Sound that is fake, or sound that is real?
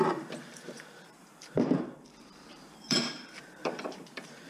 fake